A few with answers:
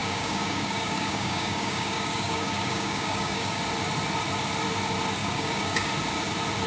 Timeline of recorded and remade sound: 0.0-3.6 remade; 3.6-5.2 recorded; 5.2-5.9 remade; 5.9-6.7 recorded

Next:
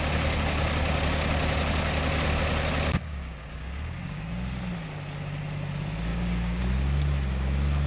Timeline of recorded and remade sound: 0.0-3.0 recorded; 3.0-4.3 remade; 4.3-6.1 recorded; 6.1-6.6 remade; 6.6-7.9 recorded

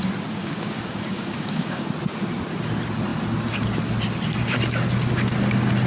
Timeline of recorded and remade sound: 0.0-0.4 recorded; 0.4-1.9 remade; 1.9-5.9 recorded

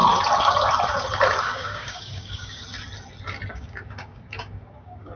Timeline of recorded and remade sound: 0.0-1.4 recorded; 1.4-2.6 remade; 2.6-3.5 recorded; 3.5-5.2 remade

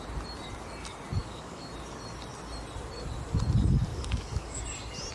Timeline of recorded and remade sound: 0.0-1.2 recorded; 1.2-1.7 remade; 1.7-3.9 recorded; 3.9-4.6 remade; 4.6-5.1 recorded